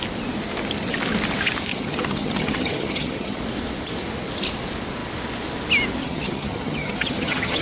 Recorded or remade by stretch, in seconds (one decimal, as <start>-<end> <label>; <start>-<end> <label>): 0.0-1.7 recorded; 1.7-3.4 remade; 3.4-6.0 recorded; 6.0-7.6 remade